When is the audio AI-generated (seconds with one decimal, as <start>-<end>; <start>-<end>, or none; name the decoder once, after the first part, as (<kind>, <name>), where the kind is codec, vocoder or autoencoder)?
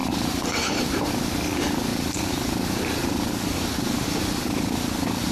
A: 0.0-1.1 (vocoder, BigVGAN v2); 1.9-5.3